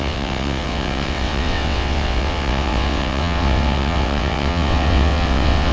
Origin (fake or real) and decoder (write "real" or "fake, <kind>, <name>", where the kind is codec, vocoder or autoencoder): fake, vocoder, WaveNeXt